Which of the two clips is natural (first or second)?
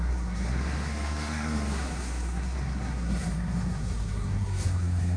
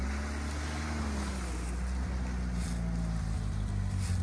second